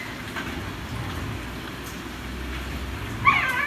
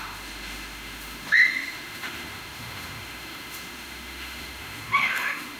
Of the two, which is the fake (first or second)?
second